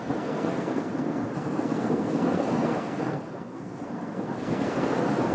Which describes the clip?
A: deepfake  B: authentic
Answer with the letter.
A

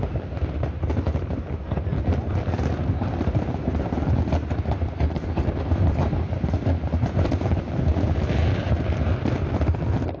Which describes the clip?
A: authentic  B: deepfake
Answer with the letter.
B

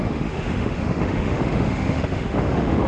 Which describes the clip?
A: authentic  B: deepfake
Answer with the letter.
B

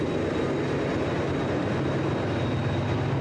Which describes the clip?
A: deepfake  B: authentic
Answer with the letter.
B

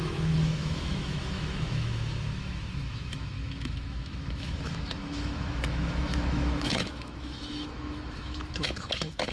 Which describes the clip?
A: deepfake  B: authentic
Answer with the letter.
A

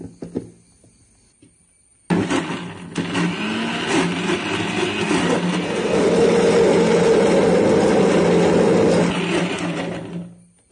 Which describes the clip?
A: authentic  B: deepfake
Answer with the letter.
A